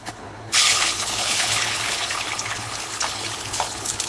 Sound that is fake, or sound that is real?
fake